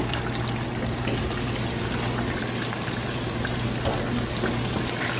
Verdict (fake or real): real